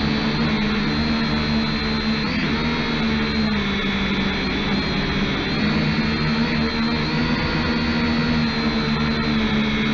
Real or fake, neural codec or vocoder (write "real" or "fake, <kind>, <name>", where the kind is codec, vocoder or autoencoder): real